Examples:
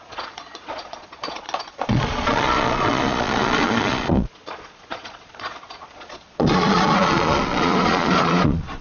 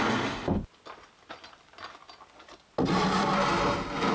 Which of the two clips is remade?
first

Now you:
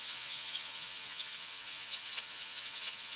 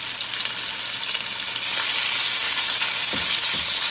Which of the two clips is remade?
first